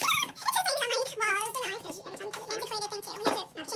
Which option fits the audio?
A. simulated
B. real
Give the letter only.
A